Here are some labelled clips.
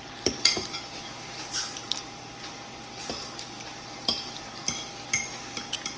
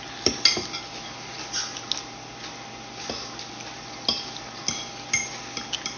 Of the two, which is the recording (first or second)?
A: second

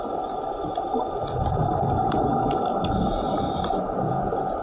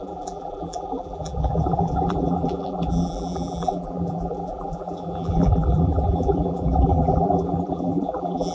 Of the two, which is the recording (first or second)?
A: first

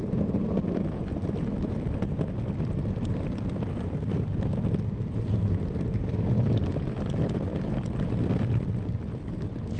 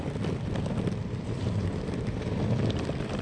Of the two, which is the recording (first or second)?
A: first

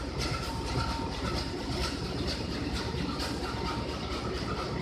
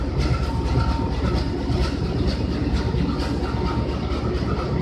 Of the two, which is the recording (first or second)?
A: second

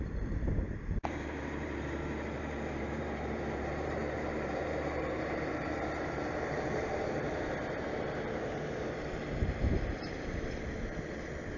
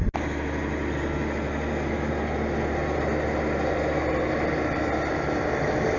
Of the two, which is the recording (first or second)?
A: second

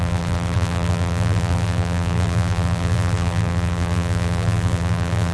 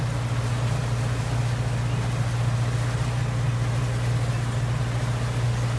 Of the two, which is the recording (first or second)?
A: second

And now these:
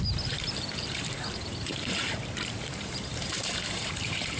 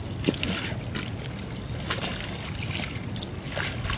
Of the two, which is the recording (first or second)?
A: second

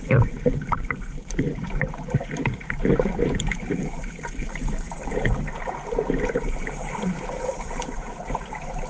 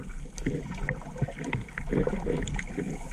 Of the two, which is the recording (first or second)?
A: second